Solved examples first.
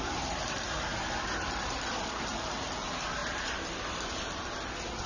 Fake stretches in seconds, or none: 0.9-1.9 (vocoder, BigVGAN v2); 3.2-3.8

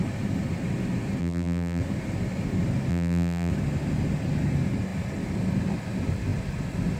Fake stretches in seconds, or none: 1.2-1.8 (vocoder, BigVGAN v2); 2.9-3.5